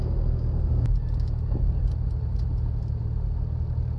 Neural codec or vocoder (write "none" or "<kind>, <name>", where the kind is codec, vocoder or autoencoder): none